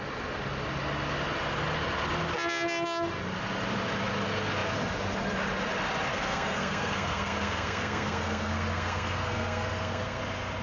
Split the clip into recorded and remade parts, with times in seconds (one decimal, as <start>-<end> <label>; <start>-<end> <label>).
0.0-6.1 recorded; 6.1-10.2 remade; 10.2-10.6 recorded